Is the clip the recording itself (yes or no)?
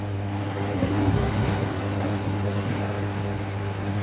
no